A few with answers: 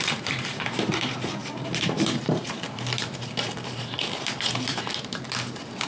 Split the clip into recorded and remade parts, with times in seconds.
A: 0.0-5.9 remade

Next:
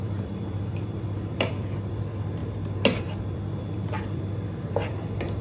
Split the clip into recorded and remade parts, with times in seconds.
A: 0.0-2.4 remade; 2.4-3.0 recorded; 3.0-5.4 remade

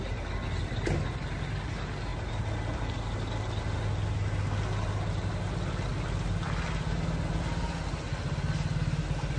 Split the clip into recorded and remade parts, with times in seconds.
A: 0.0-9.4 recorded

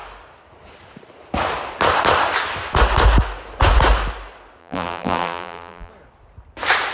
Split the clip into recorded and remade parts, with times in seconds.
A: 0.0-4.6 recorded; 4.6-5.9 remade; 5.9-6.9 recorded

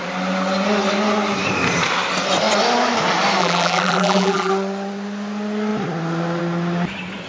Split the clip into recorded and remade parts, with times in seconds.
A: 0.0-3.4 recorded; 3.4-4.5 remade; 4.5-7.3 recorded

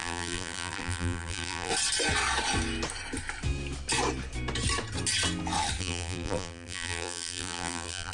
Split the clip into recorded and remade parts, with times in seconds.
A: 0.0-1.7 remade; 1.7-5.8 recorded; 5.8-8.1 remade

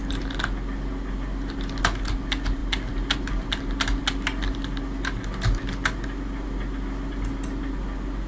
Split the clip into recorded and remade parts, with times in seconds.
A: 0.0-8.3 recorded

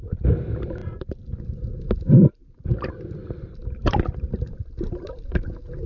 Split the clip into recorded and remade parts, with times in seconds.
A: 0.0-3.8 recorded; 3.8-5.2 remade; 5.2-5.9 recorded